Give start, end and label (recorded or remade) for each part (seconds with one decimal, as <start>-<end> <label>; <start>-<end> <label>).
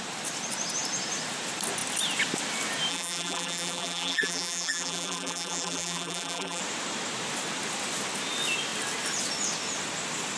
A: 0.0-2.9 recorded; 2.9-6.6 remade; 6.6-10.4 recorded